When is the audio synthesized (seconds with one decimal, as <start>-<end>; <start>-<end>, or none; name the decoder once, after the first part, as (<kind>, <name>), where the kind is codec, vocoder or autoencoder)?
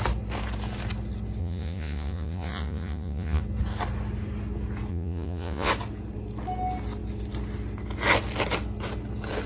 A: 1.4-3.4 (vocoder, Vocos); 4.9-5.7